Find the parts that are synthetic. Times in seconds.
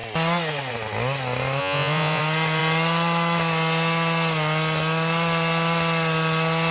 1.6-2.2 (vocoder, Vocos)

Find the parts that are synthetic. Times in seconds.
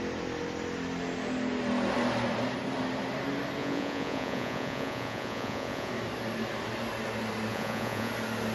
3.6-5.9 (vocoder, Vocos); 7.5-8.1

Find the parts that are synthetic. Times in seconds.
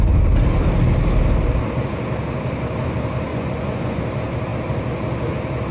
3.3-4.0 (vocoder, Vocos)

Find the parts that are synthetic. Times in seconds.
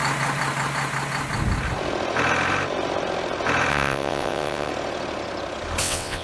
3.7-4.7 (vocoder, WaveNeXt); 5.8-6.2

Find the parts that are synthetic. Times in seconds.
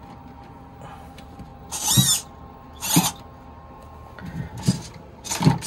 none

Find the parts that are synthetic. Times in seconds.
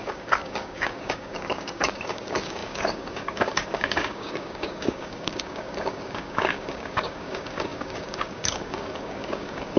0.0-9.8 (codec, DAC)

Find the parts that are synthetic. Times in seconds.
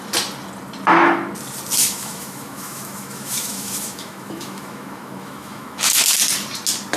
1.8-6.0 (autoencoder, DAC-VAE)